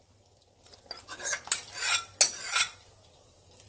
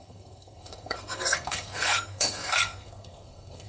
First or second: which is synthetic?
second